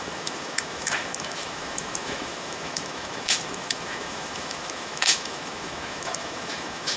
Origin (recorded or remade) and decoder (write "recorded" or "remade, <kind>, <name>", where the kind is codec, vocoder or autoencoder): remade, autoencoder, DAC-VAE